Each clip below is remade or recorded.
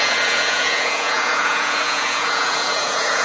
remade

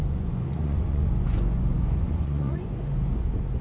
remade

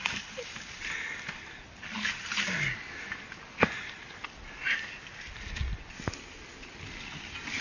recorded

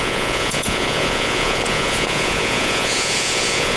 remade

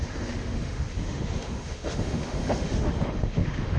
remade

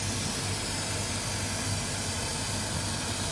recorded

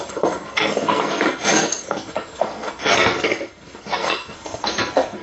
remade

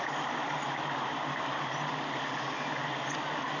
recorded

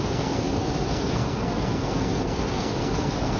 remade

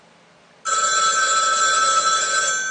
recorded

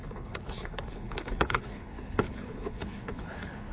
remade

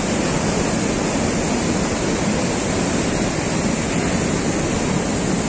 recorded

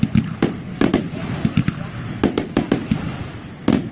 recorded